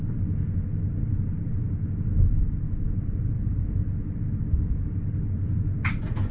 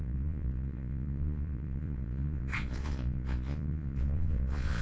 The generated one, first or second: second